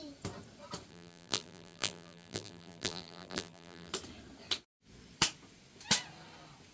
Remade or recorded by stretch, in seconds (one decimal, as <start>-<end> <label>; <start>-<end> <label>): 0.0-0.9 recorded; 0.9-3.9 remade; 3.9-6.7 recorded

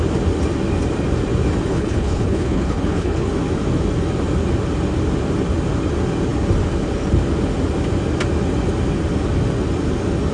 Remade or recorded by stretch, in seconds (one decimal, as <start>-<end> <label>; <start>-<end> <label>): 0.0-1.7 recorded; 1.7-3.3 remade; 3.3-10.3 recorded

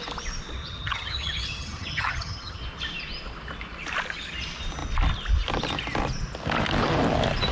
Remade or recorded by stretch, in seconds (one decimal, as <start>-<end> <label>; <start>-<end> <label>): 0.0-0.6 recorded; 0.6-2.6 remade; 2.6-7.5 recorded

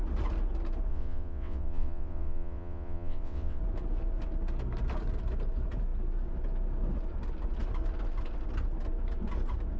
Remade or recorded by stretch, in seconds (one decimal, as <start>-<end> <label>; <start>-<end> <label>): 0.0-0.9 recorded; 0.9-3.6 remade; 3.6-9.8 recorded

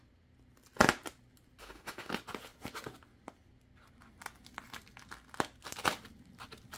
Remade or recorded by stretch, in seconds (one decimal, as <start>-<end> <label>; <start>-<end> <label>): 0.0-1.6 recorded; 1.6-2.1 remade; 2.1-6.8 recorded

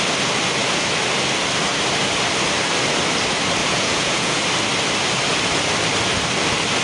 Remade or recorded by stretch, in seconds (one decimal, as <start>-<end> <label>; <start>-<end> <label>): 0.0-3.6 recorded; 3.6-4.4 remade; 4.4-6.8 recorded

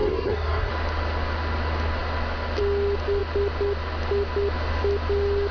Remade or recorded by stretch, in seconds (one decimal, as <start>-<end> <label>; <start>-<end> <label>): 0.0-0.7 remade; 0.7-5.5 recorded